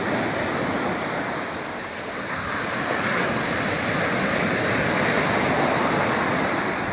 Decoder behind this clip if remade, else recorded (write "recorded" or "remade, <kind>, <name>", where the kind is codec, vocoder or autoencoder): recorded